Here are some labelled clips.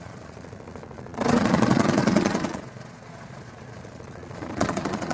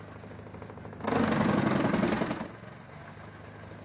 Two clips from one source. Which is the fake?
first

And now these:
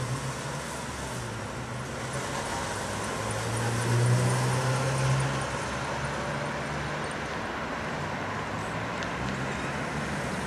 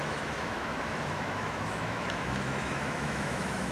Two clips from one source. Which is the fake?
second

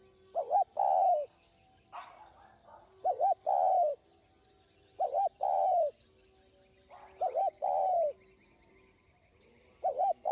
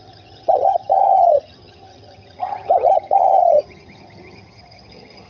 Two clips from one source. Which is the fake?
second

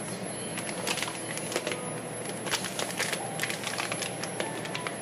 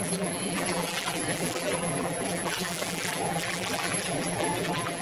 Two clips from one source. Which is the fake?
second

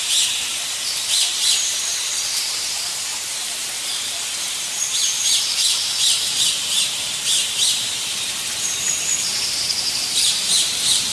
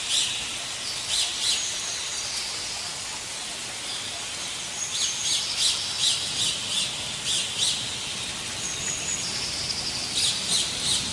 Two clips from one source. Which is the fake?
first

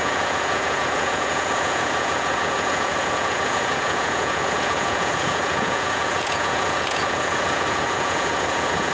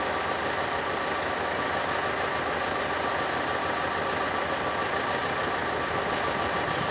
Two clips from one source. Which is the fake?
first